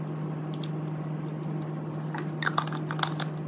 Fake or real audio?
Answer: real